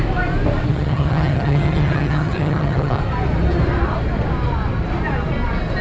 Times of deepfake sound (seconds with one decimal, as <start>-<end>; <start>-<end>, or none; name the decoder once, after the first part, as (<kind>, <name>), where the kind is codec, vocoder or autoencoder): 0.7-3.0 (vocoder, HiFi-GAN)